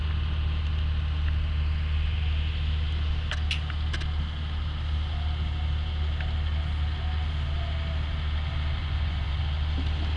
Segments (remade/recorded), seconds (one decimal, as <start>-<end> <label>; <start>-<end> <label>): 0.0-8.8 recorded; 8.8-9.4 remade; 9.4-10.2 recorded